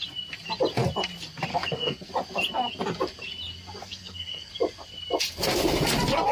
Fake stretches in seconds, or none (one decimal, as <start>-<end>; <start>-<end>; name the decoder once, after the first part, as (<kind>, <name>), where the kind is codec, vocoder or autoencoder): 1.5-2.1 (codec, SNAC); 3.8-4.5